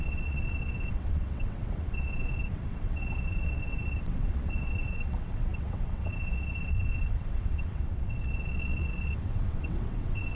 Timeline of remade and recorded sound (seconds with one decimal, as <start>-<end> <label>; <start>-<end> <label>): 0.0-10.4 remade